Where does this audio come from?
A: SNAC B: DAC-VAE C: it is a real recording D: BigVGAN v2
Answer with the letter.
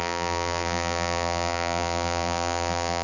D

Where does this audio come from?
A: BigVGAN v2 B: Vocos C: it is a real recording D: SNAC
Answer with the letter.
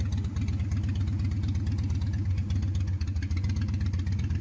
C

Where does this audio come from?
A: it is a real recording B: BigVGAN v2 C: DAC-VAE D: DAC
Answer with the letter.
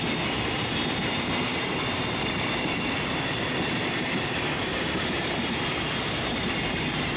B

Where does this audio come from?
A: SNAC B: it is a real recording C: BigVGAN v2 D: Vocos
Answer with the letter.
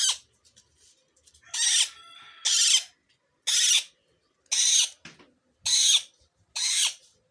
B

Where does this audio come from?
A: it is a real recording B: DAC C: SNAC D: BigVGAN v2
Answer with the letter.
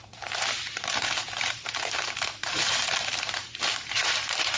D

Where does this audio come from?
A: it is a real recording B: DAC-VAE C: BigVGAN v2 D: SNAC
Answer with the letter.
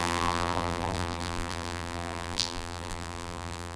C